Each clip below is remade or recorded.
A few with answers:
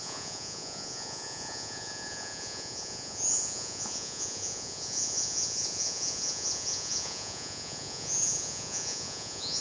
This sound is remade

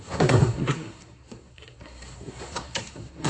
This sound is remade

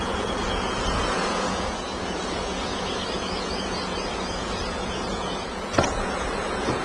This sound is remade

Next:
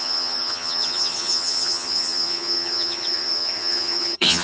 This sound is remade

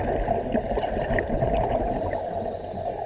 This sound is recorded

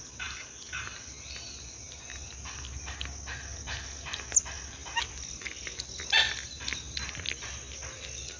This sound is recorded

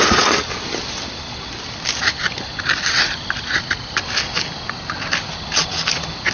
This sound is recorded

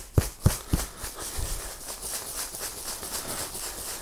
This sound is recorded